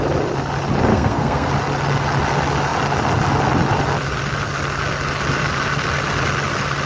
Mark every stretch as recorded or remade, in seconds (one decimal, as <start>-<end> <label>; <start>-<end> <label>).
0.0-0.9 recorded; 0.9-1.5 remade; 1.5-6.9 recorded